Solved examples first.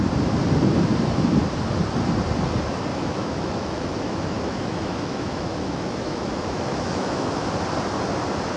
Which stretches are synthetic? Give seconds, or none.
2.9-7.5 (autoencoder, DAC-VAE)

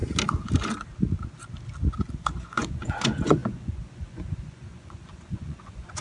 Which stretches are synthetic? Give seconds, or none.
2.1-6.0 (vocoder, Vocos)

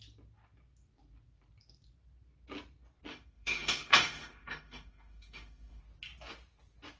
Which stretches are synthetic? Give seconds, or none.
3.1-5.8 (autoencoder, DAC-VAE)

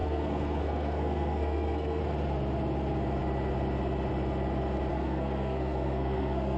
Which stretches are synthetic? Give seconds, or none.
0.0-2.0 (codec, SNAC); 4.9-6.6

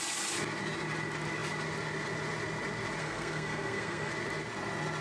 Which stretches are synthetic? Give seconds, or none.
3.0-4.1 (codec, SNAC)

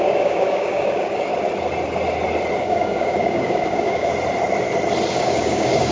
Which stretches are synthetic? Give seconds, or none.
0.0-1.3 (codec, DAC); 2.6-4.1; 5.1-5.9

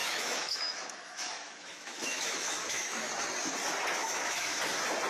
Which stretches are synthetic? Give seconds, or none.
0.0-3.1 (autoencoder, DAC-VAE); 4.0-4.6

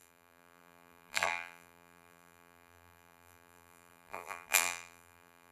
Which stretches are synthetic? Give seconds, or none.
0.0-5.5 (vocoder, BigVGAN v2)